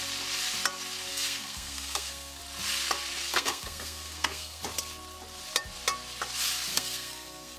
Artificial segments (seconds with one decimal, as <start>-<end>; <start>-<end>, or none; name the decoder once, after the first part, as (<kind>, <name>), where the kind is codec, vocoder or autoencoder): 1.1-2.4 (codec, SNAC); 3.2-4.6; 6.7-7.6